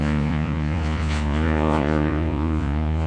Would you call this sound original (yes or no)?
no